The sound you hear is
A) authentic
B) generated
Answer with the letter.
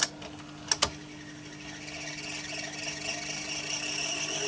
A